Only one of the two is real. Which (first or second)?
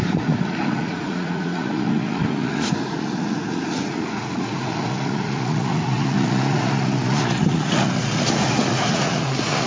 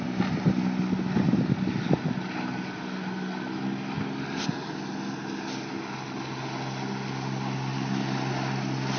second